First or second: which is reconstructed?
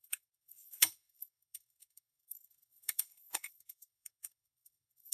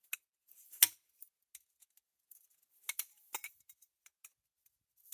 first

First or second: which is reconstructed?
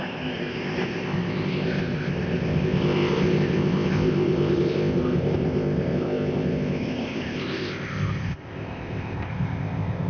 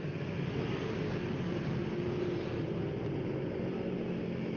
first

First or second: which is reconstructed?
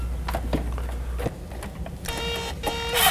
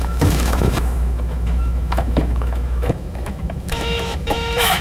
second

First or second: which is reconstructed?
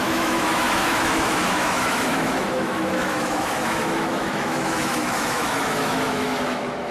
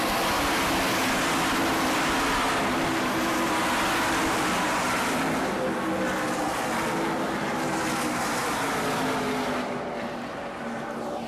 first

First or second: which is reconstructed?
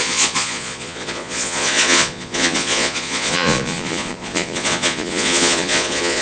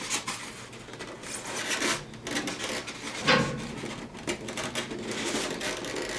first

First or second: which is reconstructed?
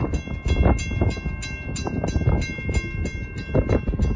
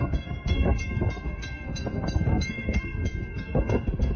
second